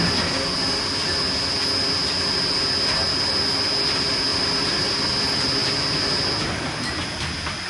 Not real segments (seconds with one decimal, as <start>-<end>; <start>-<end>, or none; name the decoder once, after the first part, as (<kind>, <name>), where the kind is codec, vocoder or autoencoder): 4.3-5.0 (vocoder, BigVGAN v2)